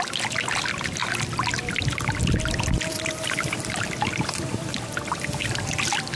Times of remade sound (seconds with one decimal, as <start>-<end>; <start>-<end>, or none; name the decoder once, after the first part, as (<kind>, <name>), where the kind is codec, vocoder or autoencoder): none